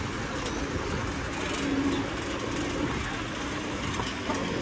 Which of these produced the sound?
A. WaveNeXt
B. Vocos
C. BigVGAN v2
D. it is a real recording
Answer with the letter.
D